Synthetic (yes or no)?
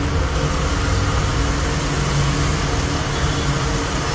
no